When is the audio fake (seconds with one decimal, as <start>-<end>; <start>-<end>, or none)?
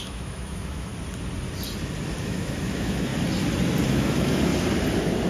0.0-0.9; 2.2-3.1; 3.9-4.5